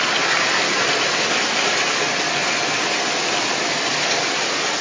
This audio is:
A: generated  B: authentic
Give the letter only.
B